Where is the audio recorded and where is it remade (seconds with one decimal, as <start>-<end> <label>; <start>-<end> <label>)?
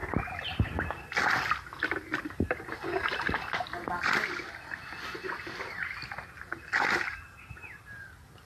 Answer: 0.0-8.5 recorded